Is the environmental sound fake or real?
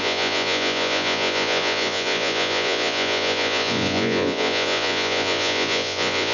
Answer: fake